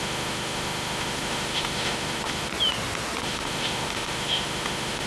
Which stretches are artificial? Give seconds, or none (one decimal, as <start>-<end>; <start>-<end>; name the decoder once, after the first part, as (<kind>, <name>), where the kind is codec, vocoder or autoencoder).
0.0-2.5 (autoencoder, DAC-VAE); 3.2-5.1

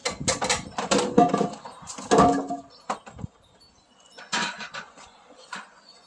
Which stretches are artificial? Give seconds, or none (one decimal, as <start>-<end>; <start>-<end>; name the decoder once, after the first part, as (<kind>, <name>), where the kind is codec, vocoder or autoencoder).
3.7-6.1 (vocoder, Vocos)

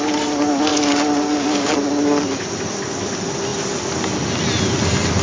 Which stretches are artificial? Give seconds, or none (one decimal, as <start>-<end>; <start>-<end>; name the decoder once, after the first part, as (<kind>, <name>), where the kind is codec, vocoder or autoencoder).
none

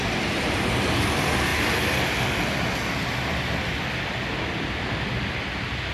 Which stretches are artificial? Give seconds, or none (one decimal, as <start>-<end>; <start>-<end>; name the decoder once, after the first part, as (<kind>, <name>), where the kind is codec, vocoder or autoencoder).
none

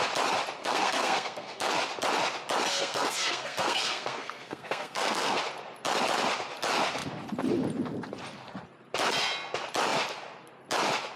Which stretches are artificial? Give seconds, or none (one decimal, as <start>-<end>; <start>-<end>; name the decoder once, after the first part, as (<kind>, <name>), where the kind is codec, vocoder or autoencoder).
0.6-1.7 (codec, SNAC); 2.7-5.4

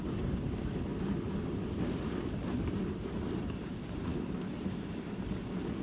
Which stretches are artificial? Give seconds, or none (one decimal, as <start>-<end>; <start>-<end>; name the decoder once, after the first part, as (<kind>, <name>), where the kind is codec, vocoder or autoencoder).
none

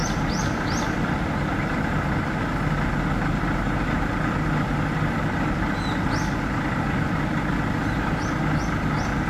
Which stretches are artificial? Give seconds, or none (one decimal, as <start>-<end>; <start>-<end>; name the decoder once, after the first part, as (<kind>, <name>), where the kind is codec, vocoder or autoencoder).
none

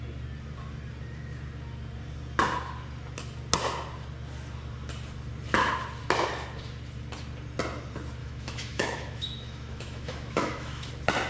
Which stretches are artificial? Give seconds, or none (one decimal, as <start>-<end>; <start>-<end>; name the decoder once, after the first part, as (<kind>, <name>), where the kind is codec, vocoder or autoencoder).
8.2-10.9 (autoencoder, DAC-VAE)